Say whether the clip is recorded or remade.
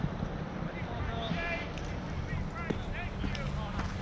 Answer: remade